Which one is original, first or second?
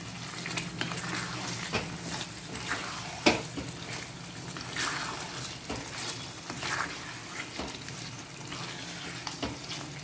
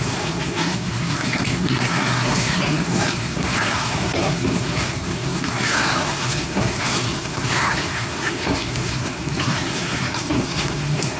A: first